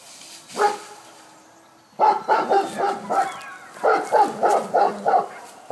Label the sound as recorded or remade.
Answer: recorded